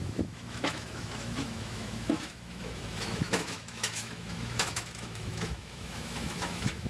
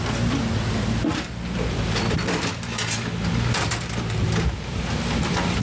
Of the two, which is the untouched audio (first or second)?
second